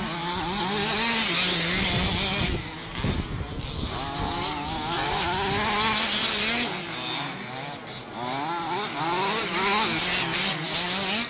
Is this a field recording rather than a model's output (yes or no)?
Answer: yes